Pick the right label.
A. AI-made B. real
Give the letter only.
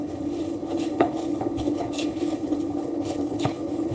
A